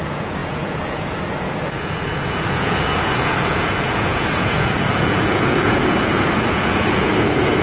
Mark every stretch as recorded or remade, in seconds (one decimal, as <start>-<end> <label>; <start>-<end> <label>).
0.0-7.6 remade